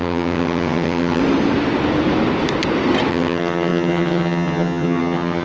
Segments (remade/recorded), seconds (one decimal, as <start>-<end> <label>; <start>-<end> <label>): 0.0-1.2 remade; 1.2-3.1 recorded; 3.1-5.4 remade